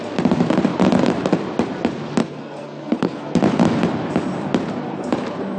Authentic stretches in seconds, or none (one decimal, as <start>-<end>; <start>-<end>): 0.0-2.2; 3.4-5.6